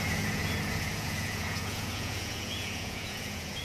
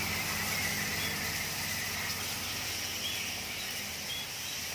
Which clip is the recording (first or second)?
second